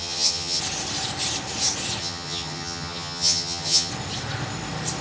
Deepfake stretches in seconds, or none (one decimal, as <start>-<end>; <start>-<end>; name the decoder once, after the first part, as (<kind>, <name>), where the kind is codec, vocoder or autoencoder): 0.0-0.6 (vocoder, HiFi-GAN); 2.0-3.9